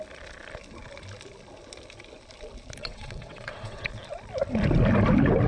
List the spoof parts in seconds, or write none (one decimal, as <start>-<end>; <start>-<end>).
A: 2.8-3.9